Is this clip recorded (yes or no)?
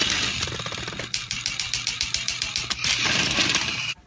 yes